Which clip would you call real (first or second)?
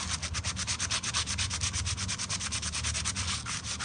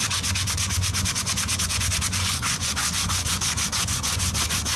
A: first